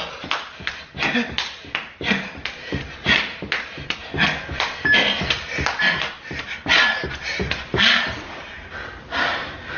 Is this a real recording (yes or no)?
yes